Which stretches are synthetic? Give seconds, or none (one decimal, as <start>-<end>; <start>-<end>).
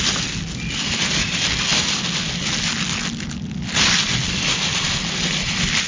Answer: none